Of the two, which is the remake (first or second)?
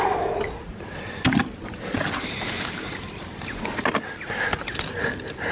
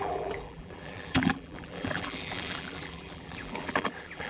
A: second